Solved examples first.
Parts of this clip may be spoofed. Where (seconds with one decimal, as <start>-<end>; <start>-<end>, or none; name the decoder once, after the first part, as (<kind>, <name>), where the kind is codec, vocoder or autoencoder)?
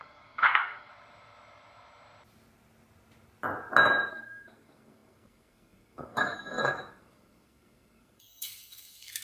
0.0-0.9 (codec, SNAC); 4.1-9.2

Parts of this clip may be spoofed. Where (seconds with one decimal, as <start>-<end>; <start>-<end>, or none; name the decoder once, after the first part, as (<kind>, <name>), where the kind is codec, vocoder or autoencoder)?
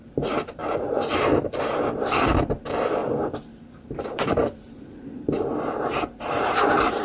0.0-0.6 (vocoder, BigVGAN v2); 1.5-7.0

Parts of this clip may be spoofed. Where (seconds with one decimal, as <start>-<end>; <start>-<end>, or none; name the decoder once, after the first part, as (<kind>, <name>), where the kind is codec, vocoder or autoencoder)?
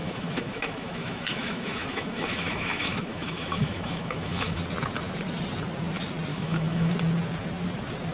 0.0-4.6 (autoencoder, DAC-VAE); 6.3-6.9